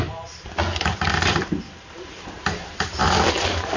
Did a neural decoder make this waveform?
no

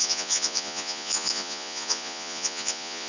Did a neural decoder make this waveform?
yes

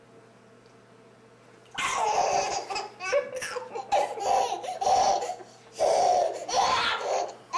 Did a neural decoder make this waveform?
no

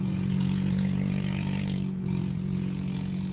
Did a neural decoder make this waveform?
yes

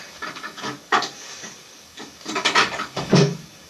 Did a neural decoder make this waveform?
yes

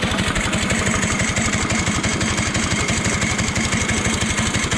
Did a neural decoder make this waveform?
no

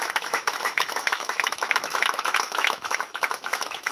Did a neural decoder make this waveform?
yes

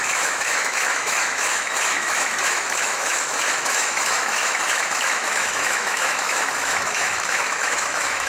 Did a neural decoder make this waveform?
yes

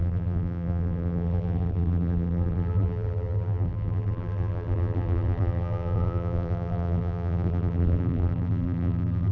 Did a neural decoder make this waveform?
yes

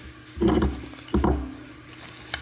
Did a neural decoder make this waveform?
no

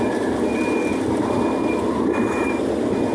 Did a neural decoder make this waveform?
no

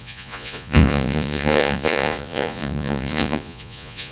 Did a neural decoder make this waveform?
yes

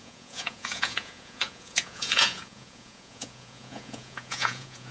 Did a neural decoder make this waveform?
yes